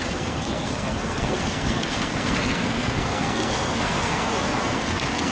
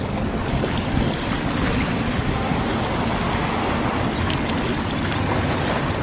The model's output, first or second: first